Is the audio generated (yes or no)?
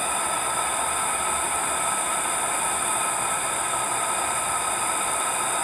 no